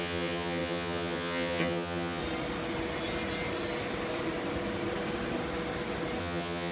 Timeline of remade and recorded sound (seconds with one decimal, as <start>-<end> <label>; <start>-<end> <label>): 0.0-2.2 remade; 2.2-6.2 recorded; 6.2-6.7 remade